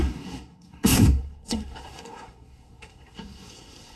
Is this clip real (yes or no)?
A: no